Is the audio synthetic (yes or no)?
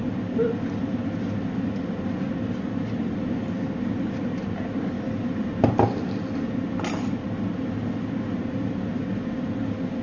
no